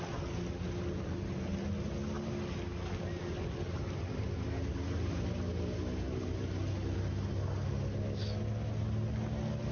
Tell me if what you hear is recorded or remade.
recorded